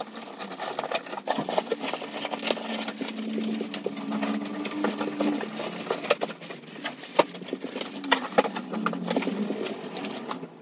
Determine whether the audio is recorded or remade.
recorded